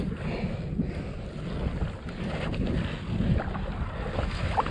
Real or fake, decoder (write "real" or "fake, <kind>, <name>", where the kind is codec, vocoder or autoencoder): real